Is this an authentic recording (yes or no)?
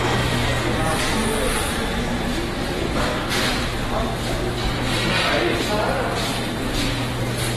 yes